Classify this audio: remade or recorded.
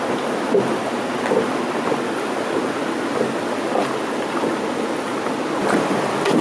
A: recorded